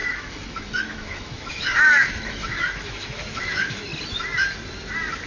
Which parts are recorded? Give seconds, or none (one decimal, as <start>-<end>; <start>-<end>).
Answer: 3.9-5.3